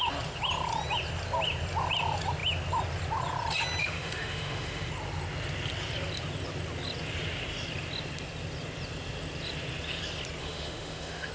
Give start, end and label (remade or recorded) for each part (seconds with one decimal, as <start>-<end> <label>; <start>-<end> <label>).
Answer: 0.0-3.8 recorded; 3.8-4.9 remade; 4.9-10.4 recorded; 10.4-11.3 remade